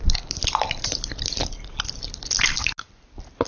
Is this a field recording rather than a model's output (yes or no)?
yes